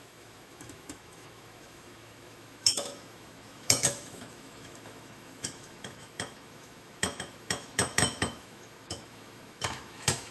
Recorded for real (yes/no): no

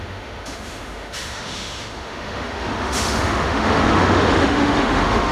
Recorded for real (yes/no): no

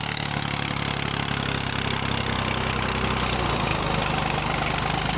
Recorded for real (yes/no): yes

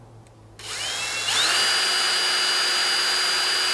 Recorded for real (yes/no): yes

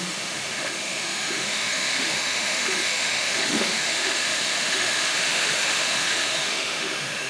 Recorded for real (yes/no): no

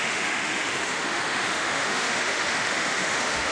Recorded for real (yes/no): no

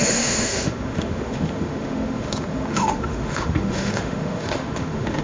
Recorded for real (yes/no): no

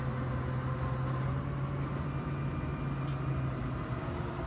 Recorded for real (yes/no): yes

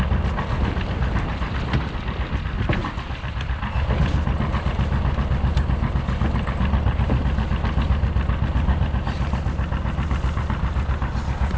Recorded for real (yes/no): yes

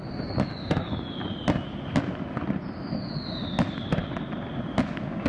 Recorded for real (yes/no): yes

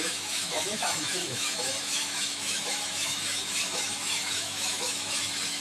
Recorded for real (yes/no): no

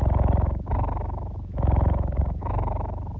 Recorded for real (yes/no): no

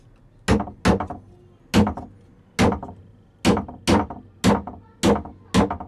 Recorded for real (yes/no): yes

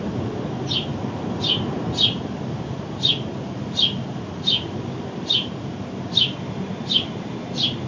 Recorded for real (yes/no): yes